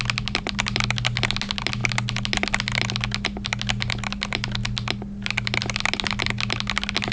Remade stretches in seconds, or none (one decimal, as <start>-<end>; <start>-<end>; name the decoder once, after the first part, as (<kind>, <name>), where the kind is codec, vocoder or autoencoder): none